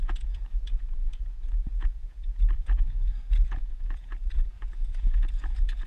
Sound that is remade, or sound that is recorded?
remade